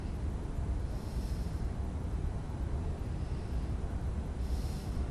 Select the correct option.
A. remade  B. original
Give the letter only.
B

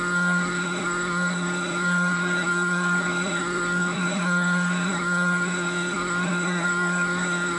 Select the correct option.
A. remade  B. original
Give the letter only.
A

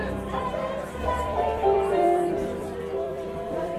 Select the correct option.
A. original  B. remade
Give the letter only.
B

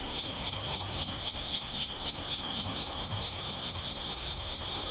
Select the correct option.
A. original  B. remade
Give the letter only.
B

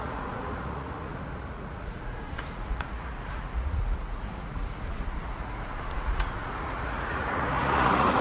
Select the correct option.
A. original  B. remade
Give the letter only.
B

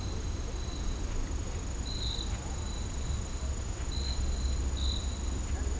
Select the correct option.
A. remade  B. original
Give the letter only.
B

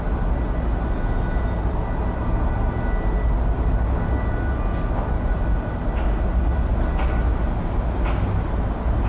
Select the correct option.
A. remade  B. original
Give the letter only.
B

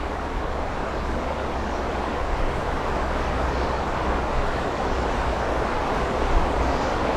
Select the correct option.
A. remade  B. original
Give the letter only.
A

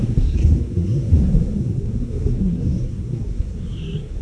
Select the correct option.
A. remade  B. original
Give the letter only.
A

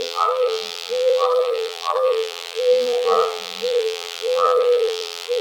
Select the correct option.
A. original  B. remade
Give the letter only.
B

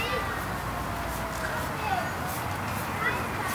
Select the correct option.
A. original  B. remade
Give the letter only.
A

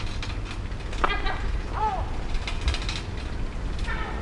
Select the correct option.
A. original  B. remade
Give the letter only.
A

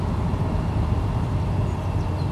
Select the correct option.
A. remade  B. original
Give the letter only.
B